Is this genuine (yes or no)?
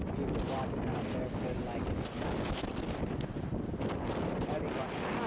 yes